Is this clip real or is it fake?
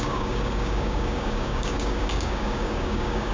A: fake